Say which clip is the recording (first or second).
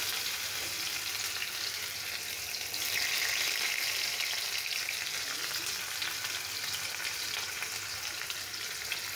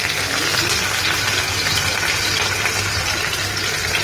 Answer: second